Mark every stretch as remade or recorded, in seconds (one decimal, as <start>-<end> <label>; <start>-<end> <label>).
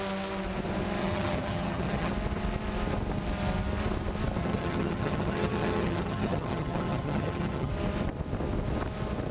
0.0-1.0 recorded; 1.0-2.1 remade; 2.1-4.4 recorded; 4.4-7.7 remade; 7.7-9.3 recorded